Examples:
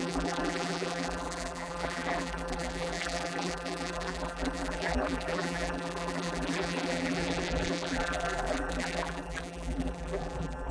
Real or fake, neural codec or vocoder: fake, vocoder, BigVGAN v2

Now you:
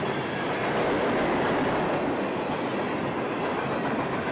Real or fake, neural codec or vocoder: real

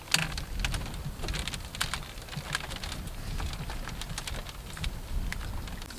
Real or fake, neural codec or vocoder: real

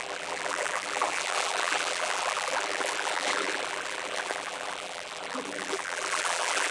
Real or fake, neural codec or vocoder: fake, vocoder, BigVGAN v2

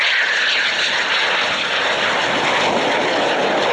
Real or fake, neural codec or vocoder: real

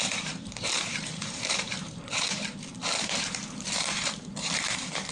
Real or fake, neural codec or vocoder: fake, vocoder, BigVGAN v2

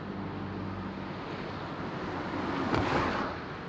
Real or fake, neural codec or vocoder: real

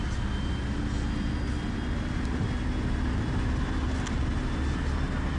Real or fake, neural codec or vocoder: real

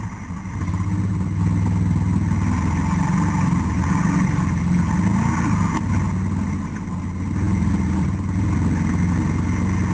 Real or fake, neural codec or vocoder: real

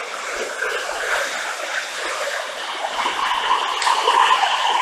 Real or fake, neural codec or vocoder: real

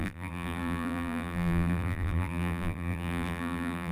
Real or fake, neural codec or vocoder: fake, vocoder, BigVGAN v2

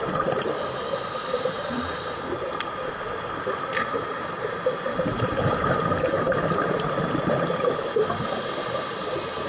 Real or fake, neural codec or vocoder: fake, vocoder, BigVGAN v2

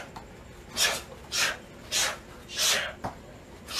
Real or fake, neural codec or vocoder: real